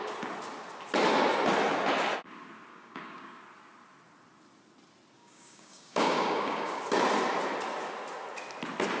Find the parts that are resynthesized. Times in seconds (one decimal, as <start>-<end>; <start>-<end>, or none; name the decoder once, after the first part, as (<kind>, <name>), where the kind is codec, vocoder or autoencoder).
2.7-3.4 (codec, DAC); 5.2-6.8